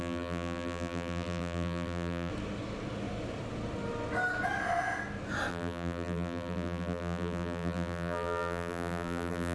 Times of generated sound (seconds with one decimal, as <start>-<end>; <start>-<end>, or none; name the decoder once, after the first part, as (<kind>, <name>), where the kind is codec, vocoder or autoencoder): 0.0-2.3 (vocoder, BigVGAN v2); 5.5-9.5